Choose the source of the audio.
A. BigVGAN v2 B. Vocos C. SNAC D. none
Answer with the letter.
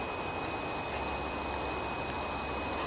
D